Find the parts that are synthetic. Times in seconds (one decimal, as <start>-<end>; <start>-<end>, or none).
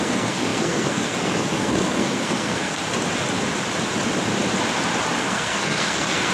0.0-2.8; 5.2-6.3